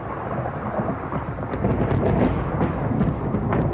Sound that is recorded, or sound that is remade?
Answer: recorded